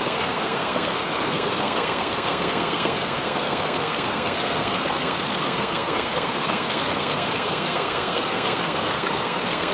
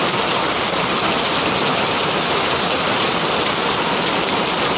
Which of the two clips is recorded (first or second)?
second